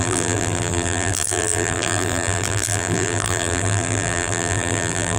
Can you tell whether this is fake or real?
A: fake